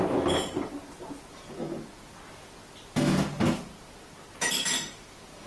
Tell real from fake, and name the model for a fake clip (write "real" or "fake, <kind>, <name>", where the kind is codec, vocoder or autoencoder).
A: real